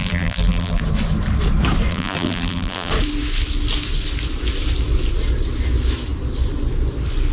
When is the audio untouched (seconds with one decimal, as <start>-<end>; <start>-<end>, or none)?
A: 0.8-1.9; 2.9-7.3